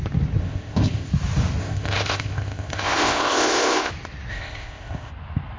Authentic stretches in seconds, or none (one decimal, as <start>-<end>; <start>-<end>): 0.0-0.4; 1.1-1.6; 3.9-4.3; 5.1-5.6